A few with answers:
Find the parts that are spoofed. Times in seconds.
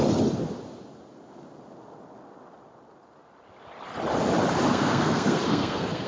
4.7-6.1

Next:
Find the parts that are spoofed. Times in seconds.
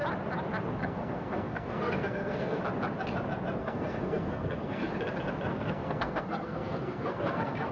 0.8-2.6; 3.6-4.8; 5.5-7.7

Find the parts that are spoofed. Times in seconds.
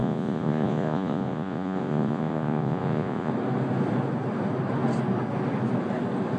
0.0-3.3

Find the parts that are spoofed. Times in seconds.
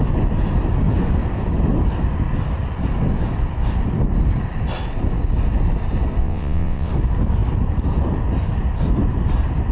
6.2-6.9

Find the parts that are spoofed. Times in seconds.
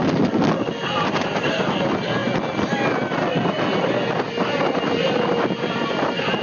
none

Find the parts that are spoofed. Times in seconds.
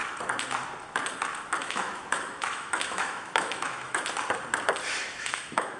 1.6-4.0; 5.0-5.8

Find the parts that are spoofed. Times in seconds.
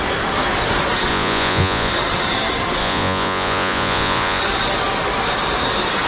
1.1-1.9; 2.8-4.4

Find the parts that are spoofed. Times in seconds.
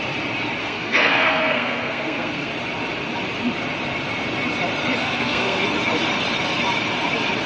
0.6-2.5; 5.0-5.6